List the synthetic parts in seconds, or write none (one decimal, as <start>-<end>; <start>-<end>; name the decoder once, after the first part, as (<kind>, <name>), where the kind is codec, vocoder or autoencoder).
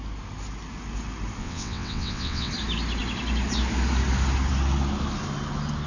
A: 1.4-2.5 (vocoder, WaveNeXt)